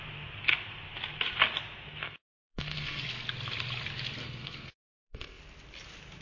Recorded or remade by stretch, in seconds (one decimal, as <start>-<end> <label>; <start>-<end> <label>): 0.0-2.0 recorded; 2.0-3.0 remade; 3.0-4.2 recorded; 4.2-5.4 remade; 5.4-6.2 recorded